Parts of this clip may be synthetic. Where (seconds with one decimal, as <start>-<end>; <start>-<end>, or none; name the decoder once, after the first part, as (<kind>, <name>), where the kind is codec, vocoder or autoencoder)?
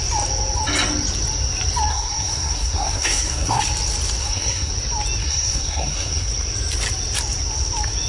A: 1.9-3.6 (codec, SNAC); 4.2-4.7; 5.2-6.3